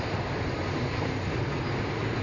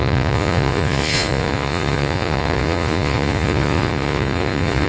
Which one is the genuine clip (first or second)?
first